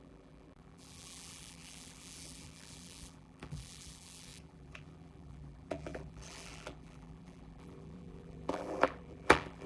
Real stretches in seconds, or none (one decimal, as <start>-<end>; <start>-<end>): none